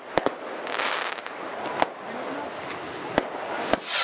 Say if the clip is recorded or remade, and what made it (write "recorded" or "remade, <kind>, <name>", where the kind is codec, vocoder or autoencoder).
recorded